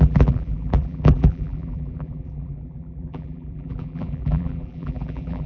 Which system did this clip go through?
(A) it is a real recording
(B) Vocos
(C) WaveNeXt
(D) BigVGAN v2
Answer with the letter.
D